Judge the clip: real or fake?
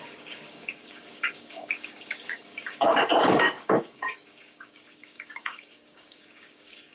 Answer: fake